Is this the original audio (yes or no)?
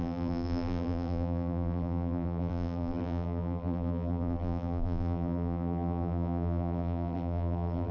no